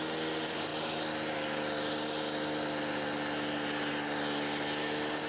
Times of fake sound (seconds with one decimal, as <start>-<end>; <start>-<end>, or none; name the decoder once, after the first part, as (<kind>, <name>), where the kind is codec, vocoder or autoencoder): none